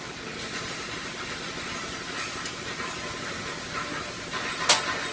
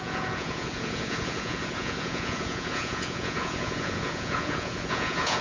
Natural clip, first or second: first